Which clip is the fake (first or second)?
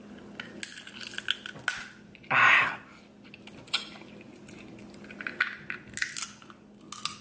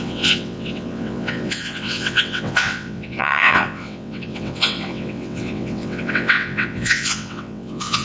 second